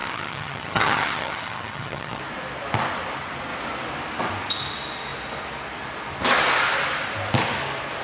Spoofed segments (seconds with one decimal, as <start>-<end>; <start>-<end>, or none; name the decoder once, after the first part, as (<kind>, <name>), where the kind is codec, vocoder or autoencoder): 0.0-2.2 (vocoder, HiFi-GAN)